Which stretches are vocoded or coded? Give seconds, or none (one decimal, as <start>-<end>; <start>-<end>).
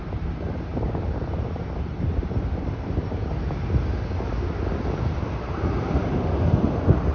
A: 0.0-0.7; 5.0-7.1